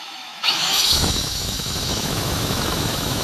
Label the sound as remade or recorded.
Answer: remade